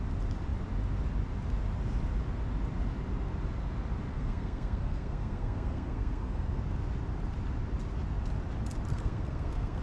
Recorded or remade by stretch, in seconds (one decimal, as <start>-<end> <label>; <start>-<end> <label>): 0.0-4.1 recorded; 4.1-6.6 remade; 6.6-8.9 recorded; 8.9-9.8 remade